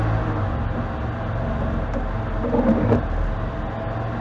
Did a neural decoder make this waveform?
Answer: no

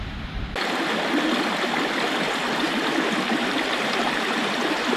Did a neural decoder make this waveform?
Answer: no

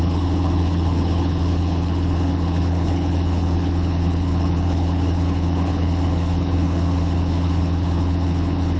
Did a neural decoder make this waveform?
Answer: yes